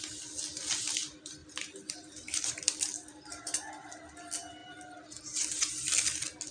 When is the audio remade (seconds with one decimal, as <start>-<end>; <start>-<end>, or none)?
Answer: 1.4-3.7; 4.6-5.2